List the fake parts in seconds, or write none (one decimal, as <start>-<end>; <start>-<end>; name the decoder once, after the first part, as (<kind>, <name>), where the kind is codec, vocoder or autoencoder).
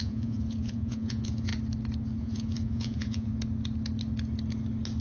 0.0-1.5 (vocoder, Vocos); 2.2-3.3